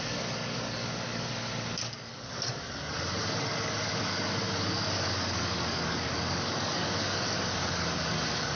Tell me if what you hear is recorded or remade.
remade